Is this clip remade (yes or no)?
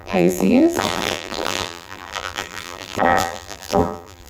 yes